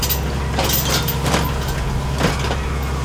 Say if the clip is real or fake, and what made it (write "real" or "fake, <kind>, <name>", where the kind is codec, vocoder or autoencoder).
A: real